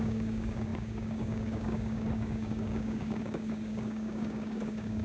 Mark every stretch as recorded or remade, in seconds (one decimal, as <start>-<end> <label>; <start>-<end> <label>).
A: 0.0-5.0 remade